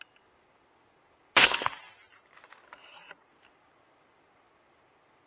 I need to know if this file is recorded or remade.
recorded